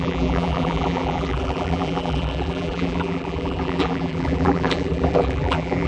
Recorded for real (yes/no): no